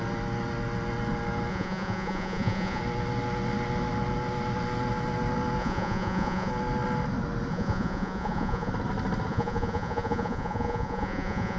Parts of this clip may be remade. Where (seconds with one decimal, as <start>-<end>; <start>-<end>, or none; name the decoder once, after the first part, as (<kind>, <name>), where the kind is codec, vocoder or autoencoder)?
1.5-2.8 (vocoder, Vocos); 5.6-6.5; 7.5-8.7; 9.3-11.6